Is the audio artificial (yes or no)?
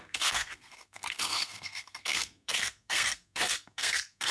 yes